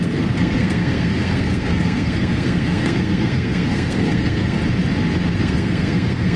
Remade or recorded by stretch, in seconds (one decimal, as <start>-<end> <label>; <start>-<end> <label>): 0.0-4.6 remade; 4.6-5.4 recorded; 5.4-6.4 remade